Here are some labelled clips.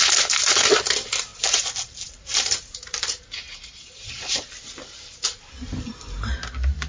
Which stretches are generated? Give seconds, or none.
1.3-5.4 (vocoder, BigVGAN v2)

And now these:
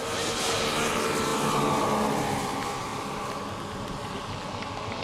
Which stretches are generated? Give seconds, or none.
none

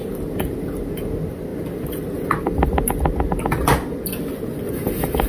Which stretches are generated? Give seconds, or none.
0.0-0.8 (vocoder, BigVGAN v2)

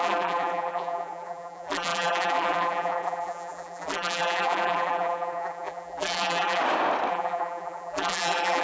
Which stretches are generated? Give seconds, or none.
0.0-6.6 (vocoder, BigVGAN v2); 7.1-8.6

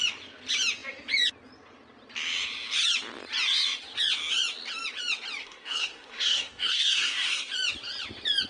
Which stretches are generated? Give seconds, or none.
5.4-7.5 (codec, SNAC)

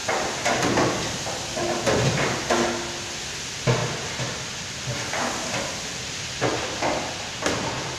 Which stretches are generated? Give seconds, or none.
none

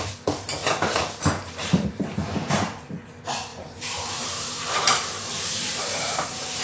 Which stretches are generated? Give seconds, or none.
0.6-3.1 (vocoder, BigVGAN v2); 3.5-6.6